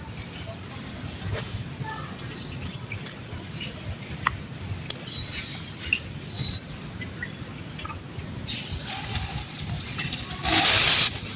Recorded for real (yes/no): yes